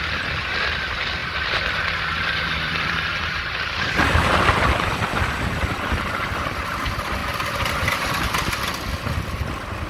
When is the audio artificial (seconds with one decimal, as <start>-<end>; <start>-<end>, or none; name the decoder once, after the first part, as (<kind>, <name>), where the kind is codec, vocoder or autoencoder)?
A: 1.2-5.3 (vocoder, BigVGAN v2); 7.2-8.7